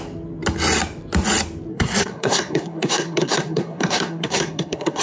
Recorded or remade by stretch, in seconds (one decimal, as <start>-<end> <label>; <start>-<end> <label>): 0.0-1.7 recorded; 1.7-5.0 remade